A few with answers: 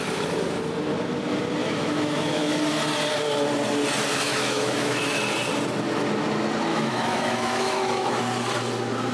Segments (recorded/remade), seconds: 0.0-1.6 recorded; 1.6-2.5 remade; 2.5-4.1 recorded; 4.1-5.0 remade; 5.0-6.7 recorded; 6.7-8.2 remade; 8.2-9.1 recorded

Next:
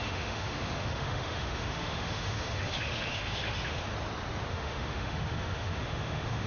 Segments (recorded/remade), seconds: 0.0-3.9 remade; 3.9-4.5 recorded; 4.5-6.5 remade

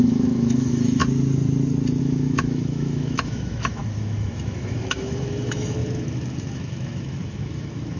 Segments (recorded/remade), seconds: 0.0-1.0 remade; 1.0-2.0 recorded; 2.0-8.0 remade

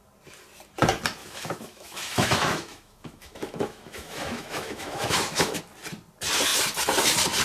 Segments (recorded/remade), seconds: 0.0-1.2 recorded; 1.2-5.6 remade; 5.6-7.4 recorded

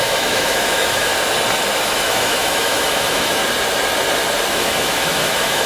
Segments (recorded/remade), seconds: 0.0-1.1 remade; 1.1-1.8 recorded; 1.8-3.4 remade; 3.4-4.5 recorded; 4.5-5.7 remade

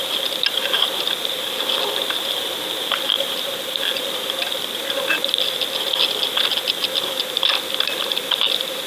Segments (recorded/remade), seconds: 0.0-8.9 recorded